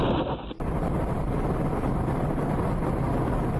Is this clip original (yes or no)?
yes